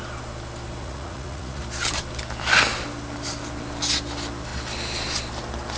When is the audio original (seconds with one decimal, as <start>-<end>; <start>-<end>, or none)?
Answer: 0.0-0.8; 1.6-5.8